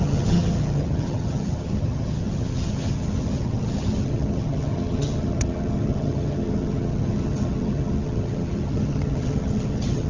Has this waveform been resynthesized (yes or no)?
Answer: yes